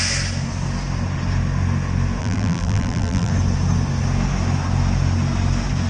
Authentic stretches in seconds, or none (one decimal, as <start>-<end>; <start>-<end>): 0.0-2.2; 3.3-5.9